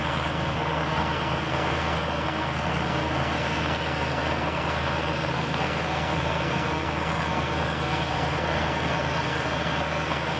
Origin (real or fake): fake